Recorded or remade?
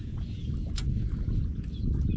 recorded